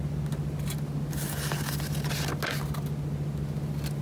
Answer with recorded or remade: recorded